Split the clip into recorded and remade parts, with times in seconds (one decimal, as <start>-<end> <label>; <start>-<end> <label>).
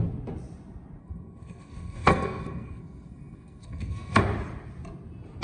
0.0-1.0 recorded; 1.0-4.2 remade; 4.2-5.4 recorded